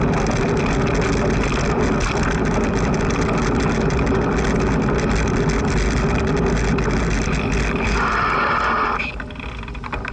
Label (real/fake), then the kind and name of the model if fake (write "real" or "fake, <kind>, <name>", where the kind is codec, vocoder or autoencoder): real